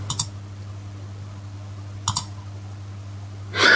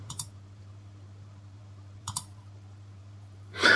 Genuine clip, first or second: first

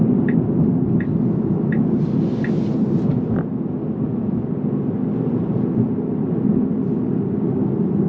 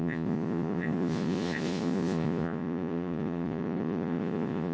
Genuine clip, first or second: first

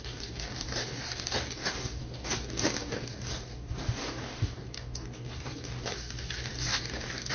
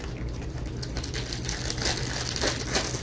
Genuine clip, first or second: second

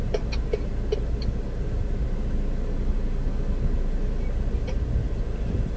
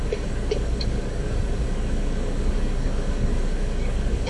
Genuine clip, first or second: first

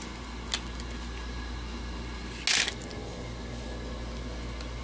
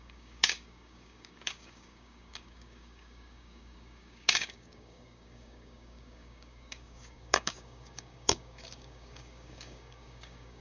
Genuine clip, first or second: first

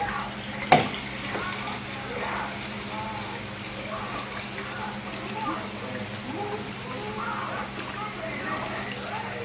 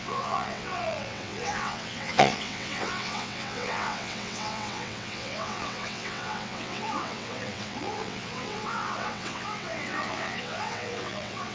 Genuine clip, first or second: first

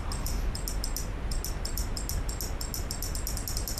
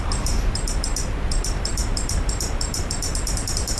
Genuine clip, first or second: first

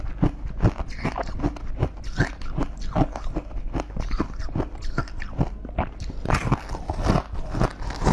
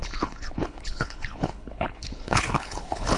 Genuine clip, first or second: first